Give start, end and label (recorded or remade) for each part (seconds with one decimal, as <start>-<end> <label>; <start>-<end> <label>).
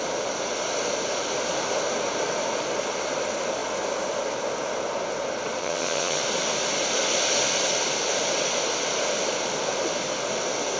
0.0-5.6 recorded; 5.6-6.2 remade; 6.2-10.8 recorded